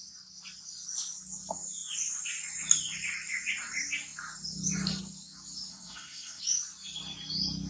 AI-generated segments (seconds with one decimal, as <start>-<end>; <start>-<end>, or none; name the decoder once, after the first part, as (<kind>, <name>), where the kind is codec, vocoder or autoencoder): 5.7-6.4 (codec, SNAC)